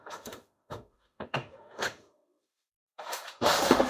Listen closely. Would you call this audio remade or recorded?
remade